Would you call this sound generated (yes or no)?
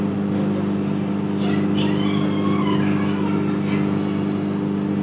no